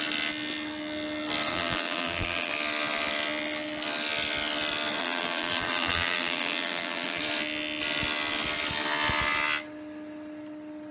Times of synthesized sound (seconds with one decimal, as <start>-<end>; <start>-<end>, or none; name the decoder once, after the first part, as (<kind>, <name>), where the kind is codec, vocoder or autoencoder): 1.5-2.5 (vocoder, BigVGAN v2); 5.0-7.2